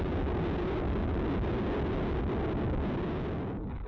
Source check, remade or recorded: recorded